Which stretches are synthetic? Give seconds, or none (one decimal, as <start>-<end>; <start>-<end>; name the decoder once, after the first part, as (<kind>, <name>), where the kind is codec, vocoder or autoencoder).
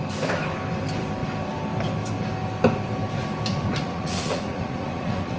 3.5-5.4 (vocoder, Vocos)